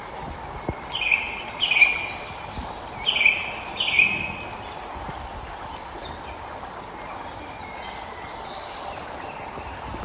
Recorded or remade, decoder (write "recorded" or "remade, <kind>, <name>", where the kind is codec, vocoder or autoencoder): recorded